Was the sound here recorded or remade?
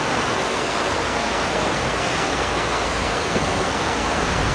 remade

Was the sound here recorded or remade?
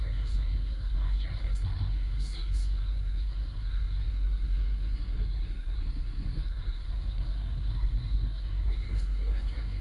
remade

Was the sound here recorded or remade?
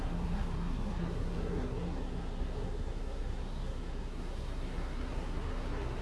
remade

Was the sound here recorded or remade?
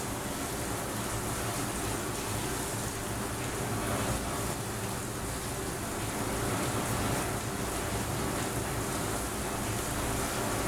recorded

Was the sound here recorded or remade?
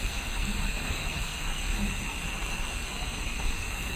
remade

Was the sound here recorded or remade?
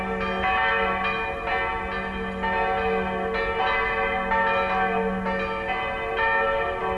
recorded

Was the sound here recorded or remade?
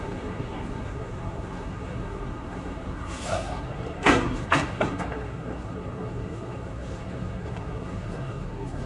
remade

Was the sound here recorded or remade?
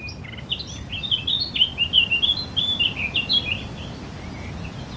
recorded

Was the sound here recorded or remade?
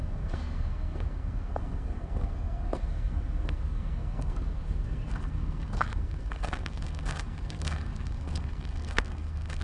remade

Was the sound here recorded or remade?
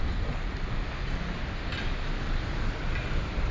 recorded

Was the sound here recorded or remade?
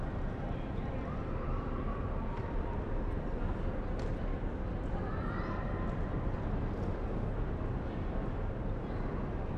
recorded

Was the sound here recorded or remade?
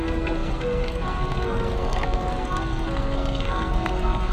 remade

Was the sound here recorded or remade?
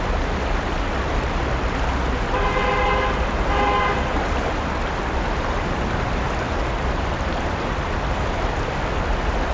recorded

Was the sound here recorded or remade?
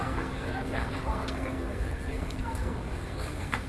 remade